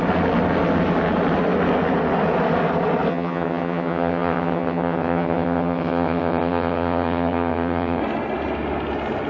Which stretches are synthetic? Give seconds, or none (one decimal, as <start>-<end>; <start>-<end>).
3.1-8.0